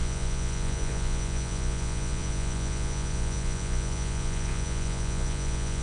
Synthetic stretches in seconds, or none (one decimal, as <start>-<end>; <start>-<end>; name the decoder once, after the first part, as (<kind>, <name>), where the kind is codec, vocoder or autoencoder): 0.0-5.8 (vocoder, Vocos)